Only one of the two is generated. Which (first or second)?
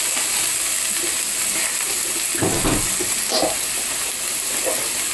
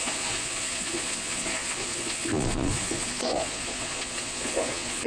second